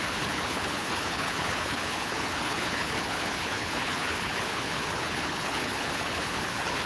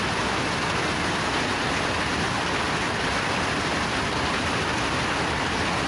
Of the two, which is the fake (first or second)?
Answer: first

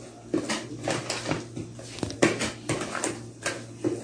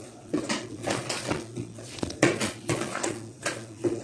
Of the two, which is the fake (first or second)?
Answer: second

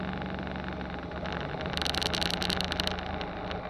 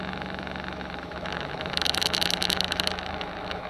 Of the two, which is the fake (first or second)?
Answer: second